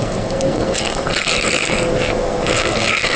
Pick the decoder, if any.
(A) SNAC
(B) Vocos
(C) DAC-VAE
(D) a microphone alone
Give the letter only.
A